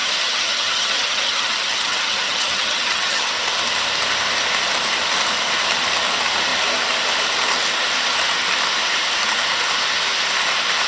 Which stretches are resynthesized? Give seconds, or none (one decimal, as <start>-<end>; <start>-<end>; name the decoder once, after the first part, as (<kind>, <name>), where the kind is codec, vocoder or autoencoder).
0.0-3.3 (vocoder, HiFi-GAN)